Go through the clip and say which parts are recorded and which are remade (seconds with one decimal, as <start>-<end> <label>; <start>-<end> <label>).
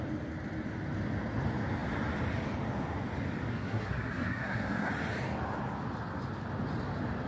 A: 0.0-3.5 recorded; 3.5-4.9 remade; 4.9-7.3 recorded